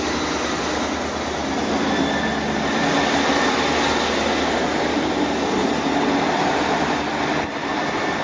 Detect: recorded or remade recorded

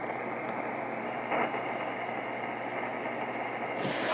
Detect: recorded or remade recorded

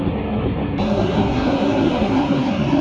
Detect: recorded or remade remade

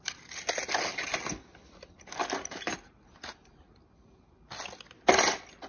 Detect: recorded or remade recorded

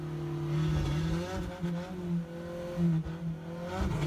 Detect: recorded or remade recorded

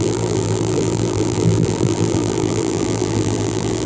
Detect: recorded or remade remade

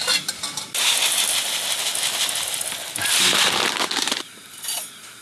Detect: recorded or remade recorded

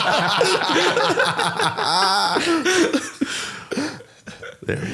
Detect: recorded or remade recorded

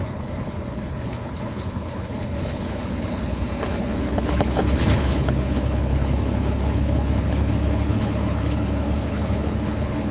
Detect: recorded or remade remade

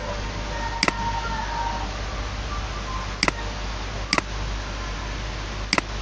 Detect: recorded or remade recorded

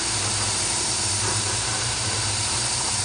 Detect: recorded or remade remade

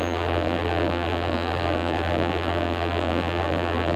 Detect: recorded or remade remade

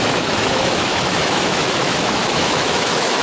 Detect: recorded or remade remade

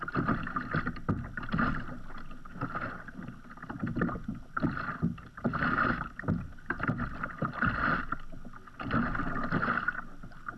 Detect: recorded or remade recorded